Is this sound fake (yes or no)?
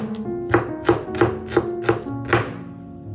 no